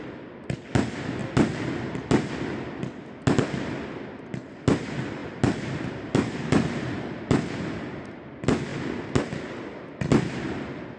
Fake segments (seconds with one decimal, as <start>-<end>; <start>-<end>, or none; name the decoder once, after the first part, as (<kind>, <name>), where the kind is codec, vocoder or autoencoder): none